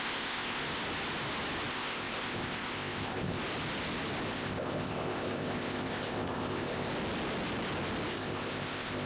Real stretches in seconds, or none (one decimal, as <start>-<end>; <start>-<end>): 0.6-1.7; 3.4-4.3; 6.9-8.1